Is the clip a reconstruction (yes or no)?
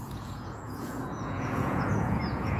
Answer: yes